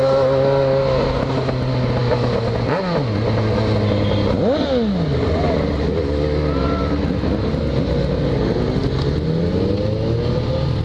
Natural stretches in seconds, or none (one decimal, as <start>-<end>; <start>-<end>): 0.0-10.8